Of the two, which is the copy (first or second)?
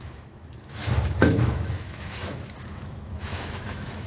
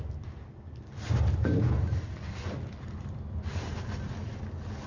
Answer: first